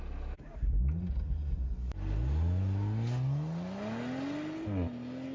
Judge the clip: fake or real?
real